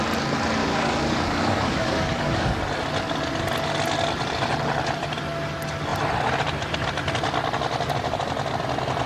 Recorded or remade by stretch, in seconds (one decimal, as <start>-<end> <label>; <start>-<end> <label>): 0.0-0.6 recorded; 0.6-2.6 remade; 2.6-9.1 recorded